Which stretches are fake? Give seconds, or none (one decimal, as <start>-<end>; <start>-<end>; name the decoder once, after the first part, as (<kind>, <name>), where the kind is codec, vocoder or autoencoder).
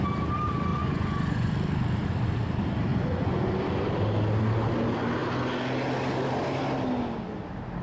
0.7-1.5 (vocoder, Vocos); 2.9-3.4